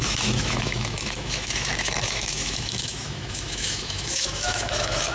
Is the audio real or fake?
fake